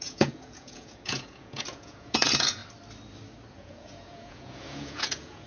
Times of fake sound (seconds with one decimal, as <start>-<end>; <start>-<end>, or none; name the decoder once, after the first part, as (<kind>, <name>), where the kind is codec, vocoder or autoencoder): 0.0-2.6 (vocoder, Vocos); 3.5-5.5